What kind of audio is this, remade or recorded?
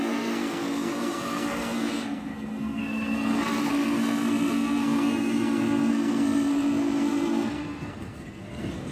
remade